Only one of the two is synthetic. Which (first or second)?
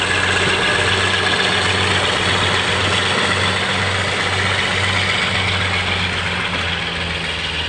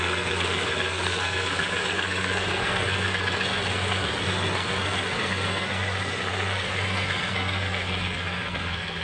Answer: second